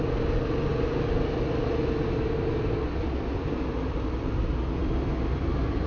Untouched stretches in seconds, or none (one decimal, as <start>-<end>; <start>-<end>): 0.0-5.9